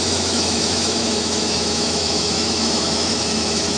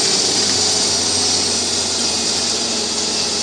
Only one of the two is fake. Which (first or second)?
first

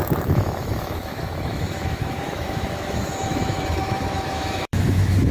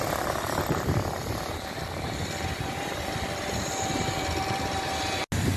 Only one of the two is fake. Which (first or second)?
first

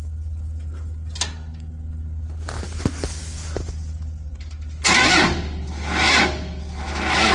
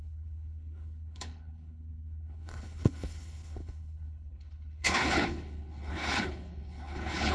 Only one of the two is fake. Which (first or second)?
second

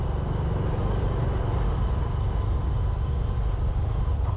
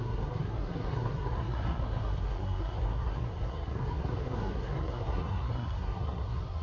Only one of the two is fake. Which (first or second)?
second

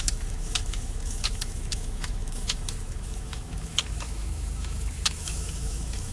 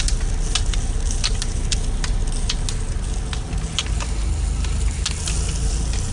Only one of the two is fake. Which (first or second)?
first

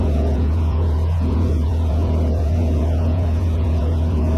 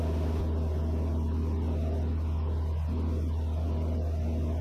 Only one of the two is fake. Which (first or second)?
first